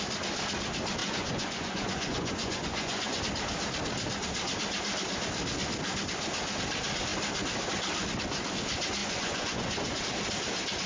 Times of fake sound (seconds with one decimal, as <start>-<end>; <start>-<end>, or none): 1.0-3.2; 9.0-10.0